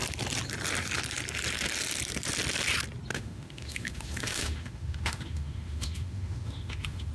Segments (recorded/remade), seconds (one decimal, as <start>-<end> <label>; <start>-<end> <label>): 0.0-3.1 recorded; 3.1-7.1 remade